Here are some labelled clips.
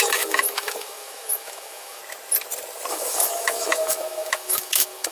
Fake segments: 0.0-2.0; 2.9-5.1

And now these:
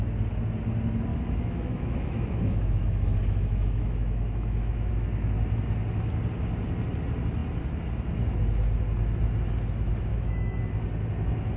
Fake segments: 1.1-4.9; 10.1-10.6

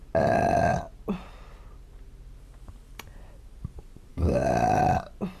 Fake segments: 4.1-4.8